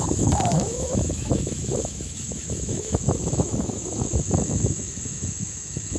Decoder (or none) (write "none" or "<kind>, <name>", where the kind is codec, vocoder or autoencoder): autoencoder, DAC-VAE